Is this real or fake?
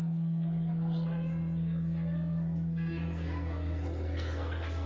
fake